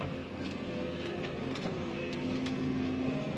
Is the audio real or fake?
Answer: fake